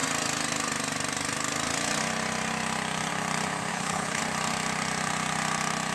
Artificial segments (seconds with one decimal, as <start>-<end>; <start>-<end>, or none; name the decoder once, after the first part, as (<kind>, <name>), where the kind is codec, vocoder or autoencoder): 3.7-4.2 (codec, HILCodec)